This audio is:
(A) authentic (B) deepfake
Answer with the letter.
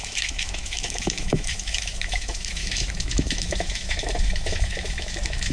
B